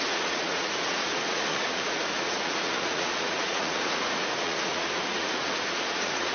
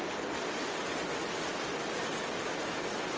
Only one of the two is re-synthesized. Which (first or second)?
first